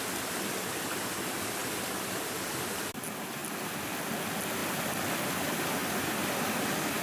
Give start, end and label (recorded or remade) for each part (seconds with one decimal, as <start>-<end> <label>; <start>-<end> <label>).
0.0-1.6 recorded; 1.6-2.7 remade; 2.7-4.6 recorded; 4.6-5.2 remade; 5.2-7.0 recorded